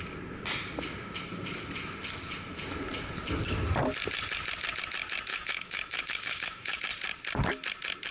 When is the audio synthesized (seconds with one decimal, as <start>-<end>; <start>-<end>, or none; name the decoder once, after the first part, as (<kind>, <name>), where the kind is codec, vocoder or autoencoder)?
5.3-6.8 (autoencoder, DAC-VAE)